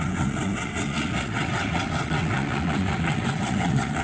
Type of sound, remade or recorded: remade